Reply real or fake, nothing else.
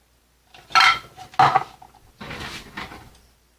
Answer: real